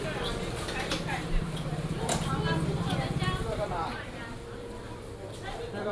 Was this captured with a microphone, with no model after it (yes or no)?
no